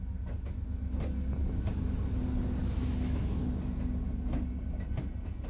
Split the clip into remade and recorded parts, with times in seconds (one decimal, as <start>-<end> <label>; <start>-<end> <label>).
0.0-1.4 recorded; 1.4-2.0 remade; 2.0-2.6 recorded; 2.6-3.4 remade; 3.4-5.5 recorded